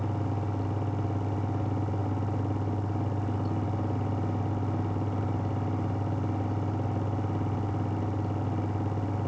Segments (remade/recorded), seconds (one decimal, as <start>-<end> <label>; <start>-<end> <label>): 0.0-9.3 recorded